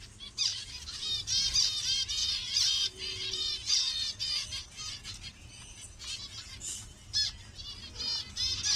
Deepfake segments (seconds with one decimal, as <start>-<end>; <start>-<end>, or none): 0.5-1.1; 2.2-6.6